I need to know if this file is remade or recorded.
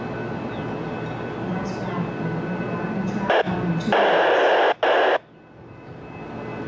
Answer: recorded